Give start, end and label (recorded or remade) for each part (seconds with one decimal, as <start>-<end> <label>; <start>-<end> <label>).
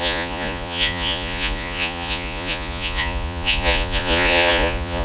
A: 0.0-5.0 remade